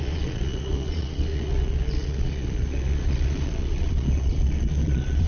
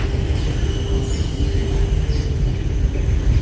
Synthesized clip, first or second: first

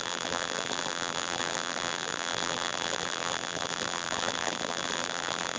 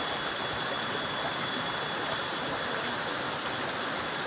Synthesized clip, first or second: first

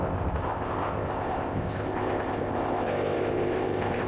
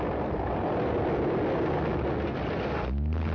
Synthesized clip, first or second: first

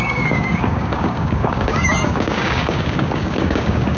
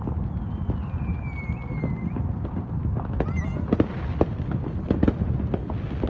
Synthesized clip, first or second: first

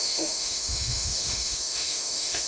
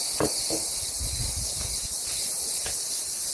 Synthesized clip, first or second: first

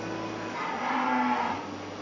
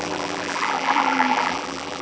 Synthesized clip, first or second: second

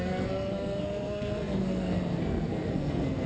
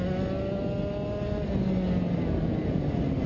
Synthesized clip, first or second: first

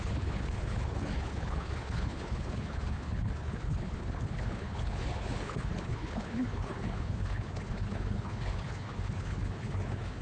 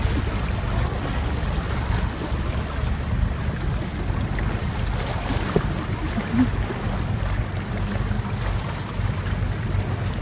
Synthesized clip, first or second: first